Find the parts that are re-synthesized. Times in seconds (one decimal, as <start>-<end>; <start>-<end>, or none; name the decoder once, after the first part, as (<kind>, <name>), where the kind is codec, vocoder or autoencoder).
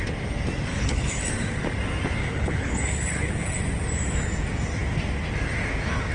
0.7-1.3 (codec, HILCodec); 2.2-3.6